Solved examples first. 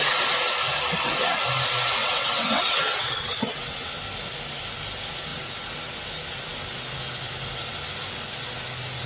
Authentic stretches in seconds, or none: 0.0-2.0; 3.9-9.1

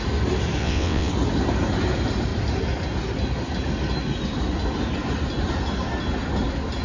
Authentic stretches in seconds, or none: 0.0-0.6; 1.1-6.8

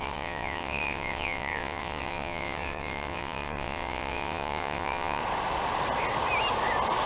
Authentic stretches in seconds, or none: 5.2-7.1

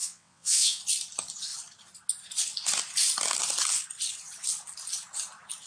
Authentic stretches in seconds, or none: 0.8-5.7

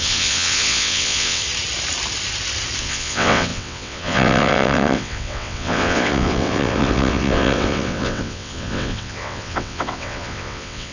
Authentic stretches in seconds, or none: 1.4-2.8